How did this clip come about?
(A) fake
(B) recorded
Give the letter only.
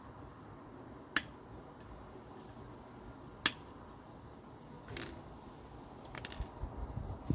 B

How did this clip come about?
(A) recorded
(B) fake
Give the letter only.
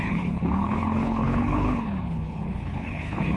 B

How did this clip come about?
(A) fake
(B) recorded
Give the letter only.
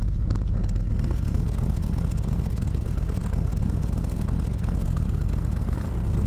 A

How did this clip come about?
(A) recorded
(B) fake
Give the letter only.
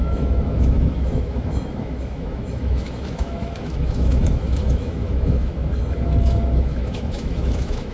B